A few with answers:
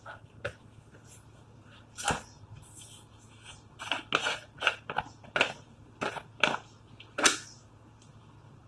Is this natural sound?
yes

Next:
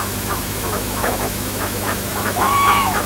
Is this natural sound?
no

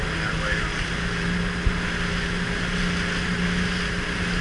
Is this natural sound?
yes